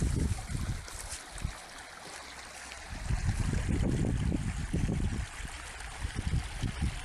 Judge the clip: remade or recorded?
recorded